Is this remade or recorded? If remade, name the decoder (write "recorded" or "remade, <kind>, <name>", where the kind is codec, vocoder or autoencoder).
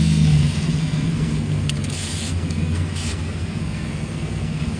remade, codec, SNAC